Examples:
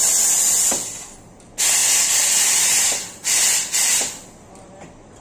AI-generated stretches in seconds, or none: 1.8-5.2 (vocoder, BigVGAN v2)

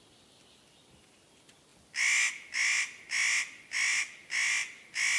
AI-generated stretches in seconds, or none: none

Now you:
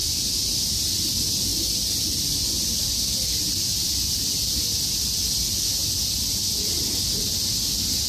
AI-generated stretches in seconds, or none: 0.0-1.0 (vocoder, BigVGAN v2); 3.7-4.5

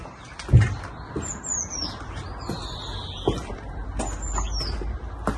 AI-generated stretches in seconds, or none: none

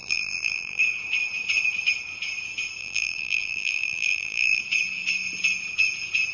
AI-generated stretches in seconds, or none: 0.0-0.8 (vocoder, BigVGAN v2); 2.8-4.6

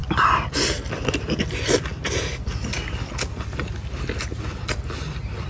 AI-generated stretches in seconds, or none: none

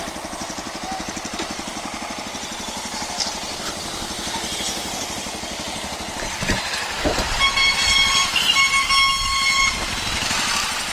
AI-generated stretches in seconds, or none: 0.0-1.7 (vocoder, BigVGAN v2); 3.1-8.2; 9.7-10.9